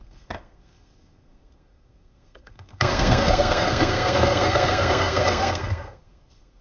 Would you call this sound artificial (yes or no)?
yes